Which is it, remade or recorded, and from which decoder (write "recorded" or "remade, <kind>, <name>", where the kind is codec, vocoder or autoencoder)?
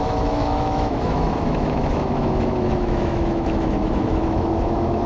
remade, autoencoder, DAC-VAE